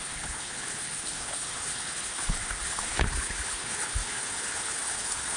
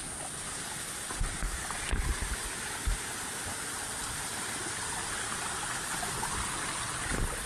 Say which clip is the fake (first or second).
first